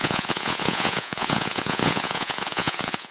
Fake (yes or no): yes